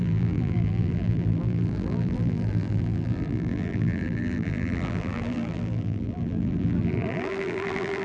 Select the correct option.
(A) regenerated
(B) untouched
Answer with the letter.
A